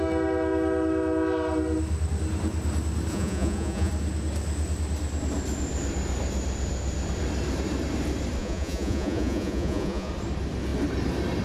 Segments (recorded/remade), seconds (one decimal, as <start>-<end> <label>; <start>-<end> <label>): 0.0-3.1 recorded; 3.1-3.9 remade; 3.9-8.4 recorded; 8.4-10.1 remade; 10.1-11.4 recorded